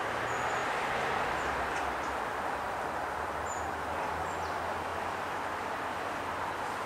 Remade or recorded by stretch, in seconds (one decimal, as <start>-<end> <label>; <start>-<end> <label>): 0.0-0.6 recorded; 0.6-2.9 remade; 2.9-4.9 recorded; 4.9-5.6 remade; 5.6-6.9 recorded